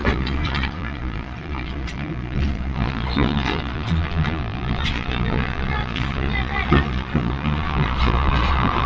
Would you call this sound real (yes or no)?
no